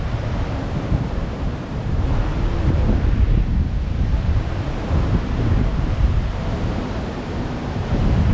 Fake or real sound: fake